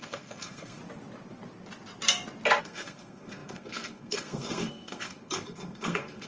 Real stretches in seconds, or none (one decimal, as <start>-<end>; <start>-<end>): 0.8-2.6